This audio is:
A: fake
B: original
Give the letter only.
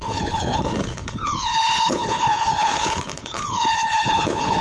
A